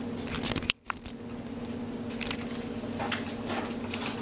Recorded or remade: recorded